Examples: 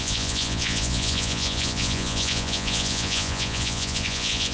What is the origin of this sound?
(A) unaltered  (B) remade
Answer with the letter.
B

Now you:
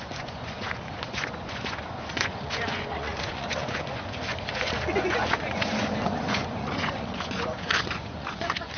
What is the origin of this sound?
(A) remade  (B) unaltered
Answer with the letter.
A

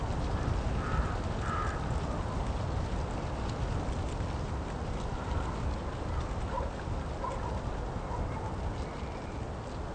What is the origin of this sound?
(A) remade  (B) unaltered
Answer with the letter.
B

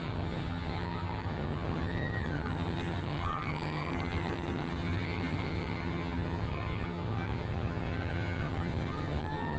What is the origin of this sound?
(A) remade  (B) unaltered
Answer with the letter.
A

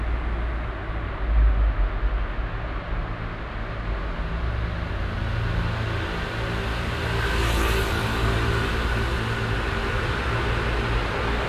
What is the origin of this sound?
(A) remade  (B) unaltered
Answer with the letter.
B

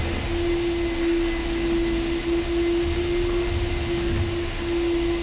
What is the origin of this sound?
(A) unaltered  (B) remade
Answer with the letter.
A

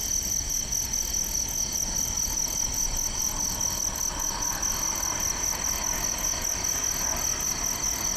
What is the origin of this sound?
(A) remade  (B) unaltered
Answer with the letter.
B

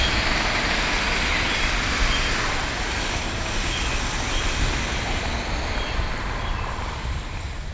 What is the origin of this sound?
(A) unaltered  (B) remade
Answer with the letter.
A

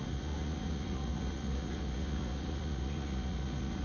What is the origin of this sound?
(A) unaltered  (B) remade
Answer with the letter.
B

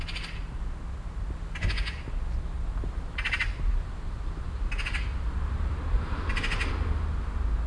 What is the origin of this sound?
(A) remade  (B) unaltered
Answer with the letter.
B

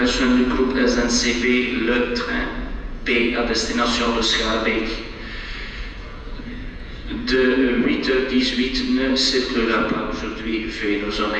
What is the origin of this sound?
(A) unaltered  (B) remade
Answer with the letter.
B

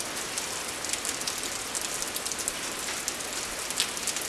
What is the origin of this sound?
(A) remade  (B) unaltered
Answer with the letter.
B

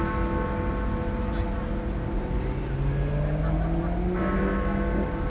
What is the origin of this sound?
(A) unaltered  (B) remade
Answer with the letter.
A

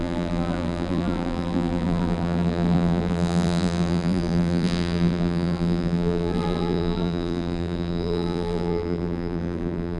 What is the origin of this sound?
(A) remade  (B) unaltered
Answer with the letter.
A